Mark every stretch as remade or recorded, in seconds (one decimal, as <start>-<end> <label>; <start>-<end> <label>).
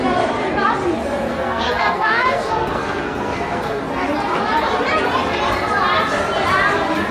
0.0-1.3 recorded; 1.3-3.8 remade; 3.8-7.1 recorded